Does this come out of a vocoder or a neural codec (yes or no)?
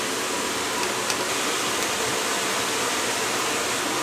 no